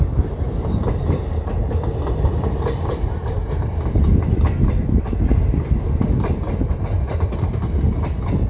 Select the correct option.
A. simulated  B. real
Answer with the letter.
B